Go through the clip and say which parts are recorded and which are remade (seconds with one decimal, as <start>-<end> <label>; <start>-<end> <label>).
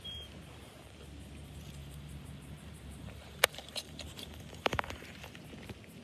0.0-1.8 recorded; 1.8-5.4 remade; 5.4-6.0 recorded